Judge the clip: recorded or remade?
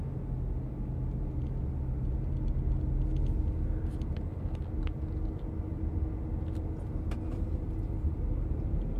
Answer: recorded